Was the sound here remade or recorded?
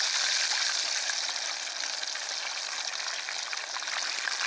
recorded